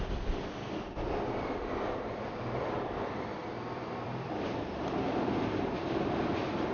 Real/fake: fake